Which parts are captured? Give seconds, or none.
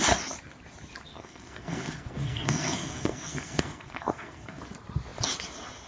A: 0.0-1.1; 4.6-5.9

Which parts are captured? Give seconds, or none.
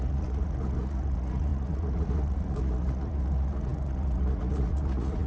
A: none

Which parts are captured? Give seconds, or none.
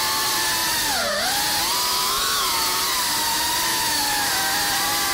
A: 0.0-1.9; 2.8-3.7; 4.3-5.1